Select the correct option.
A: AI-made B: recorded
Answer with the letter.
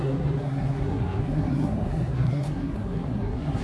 A